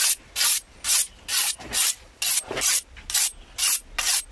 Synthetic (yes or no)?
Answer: no